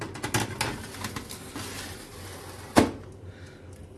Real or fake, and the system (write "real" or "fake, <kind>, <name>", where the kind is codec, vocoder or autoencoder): real